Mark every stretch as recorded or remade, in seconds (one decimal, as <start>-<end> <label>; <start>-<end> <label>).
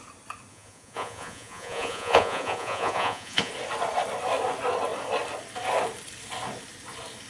0.0-0.5 recorded; 0.5-3.5 remade; 3.5-7.3 recorded